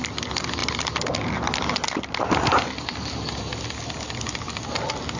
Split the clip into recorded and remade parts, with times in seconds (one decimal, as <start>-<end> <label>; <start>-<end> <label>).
0.0-5.2 recorded